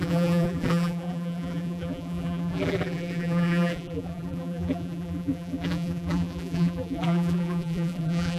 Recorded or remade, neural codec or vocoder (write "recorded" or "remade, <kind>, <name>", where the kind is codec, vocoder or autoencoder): remade, vocoder, BigVGAN v2